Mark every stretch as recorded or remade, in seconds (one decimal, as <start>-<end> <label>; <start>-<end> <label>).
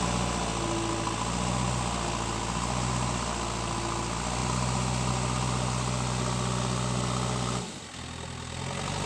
0.0-9.1 recorded